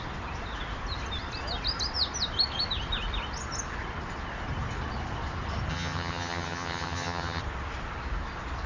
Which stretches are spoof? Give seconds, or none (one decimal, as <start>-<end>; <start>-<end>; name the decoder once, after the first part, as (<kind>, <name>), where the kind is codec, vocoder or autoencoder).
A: 5.7-7.4 (vocoder, HiFi-GAN)